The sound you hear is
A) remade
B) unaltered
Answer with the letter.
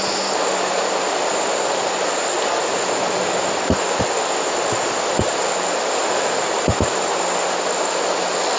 B